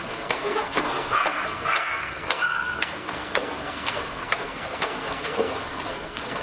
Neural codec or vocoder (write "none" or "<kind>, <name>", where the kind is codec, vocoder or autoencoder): codec, SNAC